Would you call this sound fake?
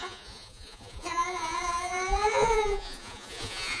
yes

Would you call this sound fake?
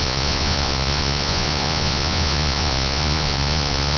yes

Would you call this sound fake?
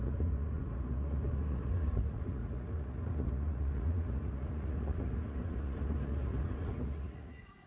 yes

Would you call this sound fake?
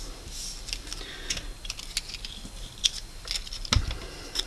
no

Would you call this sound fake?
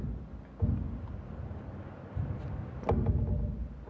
no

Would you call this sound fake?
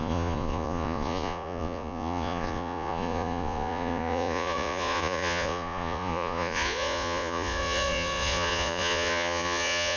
yes